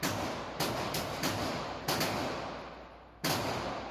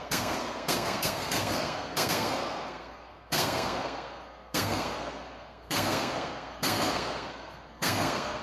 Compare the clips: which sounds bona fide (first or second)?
first